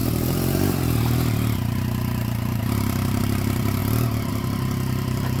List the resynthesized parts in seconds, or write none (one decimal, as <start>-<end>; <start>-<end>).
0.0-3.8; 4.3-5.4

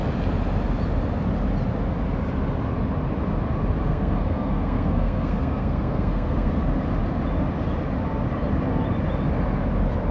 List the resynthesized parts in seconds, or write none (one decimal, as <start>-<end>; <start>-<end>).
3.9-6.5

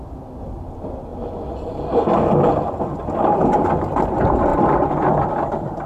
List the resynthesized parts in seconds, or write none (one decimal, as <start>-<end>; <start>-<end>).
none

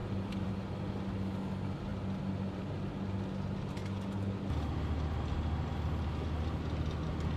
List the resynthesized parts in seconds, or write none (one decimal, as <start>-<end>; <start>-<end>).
0.0-0.5

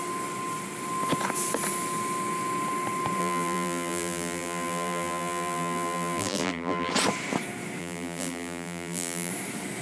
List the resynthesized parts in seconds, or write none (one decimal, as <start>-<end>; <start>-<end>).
3.2-6.9; 7.8-9.3

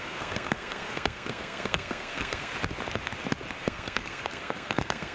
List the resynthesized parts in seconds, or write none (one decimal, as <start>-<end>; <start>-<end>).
0.0-2.5; 3.6-5.1

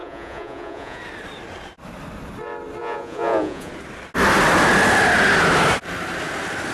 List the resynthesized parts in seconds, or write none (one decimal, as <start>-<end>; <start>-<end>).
0.0-1.0; 2.8-3.7

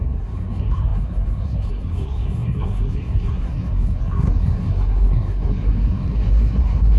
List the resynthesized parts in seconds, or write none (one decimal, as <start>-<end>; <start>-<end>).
0.0-7.0